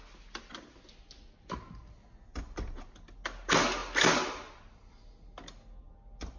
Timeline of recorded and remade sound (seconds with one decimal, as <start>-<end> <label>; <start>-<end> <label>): 0.0-6.4 recorded